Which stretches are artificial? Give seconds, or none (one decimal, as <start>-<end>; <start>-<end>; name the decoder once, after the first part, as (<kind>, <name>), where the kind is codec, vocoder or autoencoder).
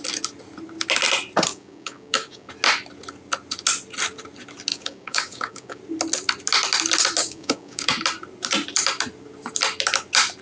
1.5-2.5 (codec, DAC); 4.7-5.8; 7.2-7.9